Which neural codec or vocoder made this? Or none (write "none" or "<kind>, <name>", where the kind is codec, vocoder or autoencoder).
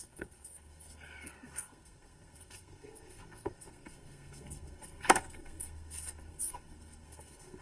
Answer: codec, SNAC